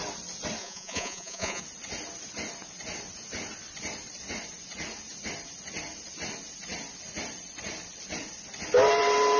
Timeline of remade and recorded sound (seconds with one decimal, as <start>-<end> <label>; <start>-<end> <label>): 0.0-0.6 recorded; 0.6-1.6 remade; 1.6-9.4 recorded